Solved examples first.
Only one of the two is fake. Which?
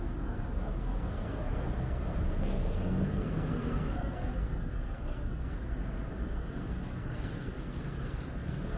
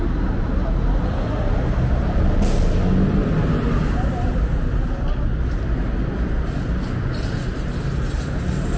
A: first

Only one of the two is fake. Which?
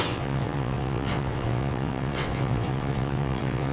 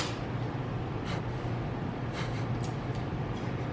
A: first